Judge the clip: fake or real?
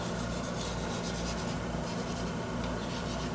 real